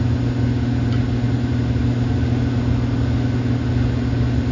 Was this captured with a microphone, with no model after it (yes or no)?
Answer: yes